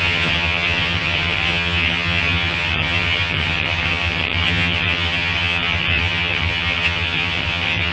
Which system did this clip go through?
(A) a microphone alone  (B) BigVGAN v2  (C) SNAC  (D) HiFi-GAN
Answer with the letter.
D